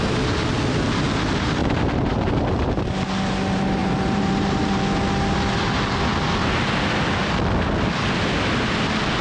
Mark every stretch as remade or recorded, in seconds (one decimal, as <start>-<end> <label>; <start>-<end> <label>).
0.0-1.6 recorded; 1.6-2.9 remade; 2.9-3.8 recorded; 3.8-4.8 remade; 4.8-9.2 recorded